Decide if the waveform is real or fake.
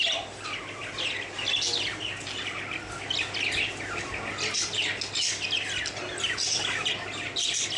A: real